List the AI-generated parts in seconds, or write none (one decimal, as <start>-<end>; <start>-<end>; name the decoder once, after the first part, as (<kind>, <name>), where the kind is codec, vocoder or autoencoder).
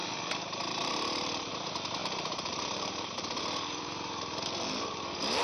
0.0-1.5 (vocoder, BigVGAN v2); 2.0-5.4